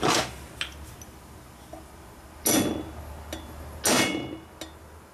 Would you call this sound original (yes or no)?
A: yes